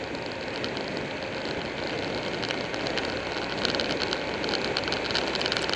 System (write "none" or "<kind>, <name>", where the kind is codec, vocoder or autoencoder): none